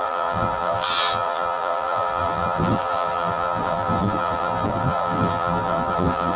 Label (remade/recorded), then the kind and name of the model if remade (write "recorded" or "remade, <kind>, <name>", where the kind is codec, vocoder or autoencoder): remade, vocoder, BigVGAN v2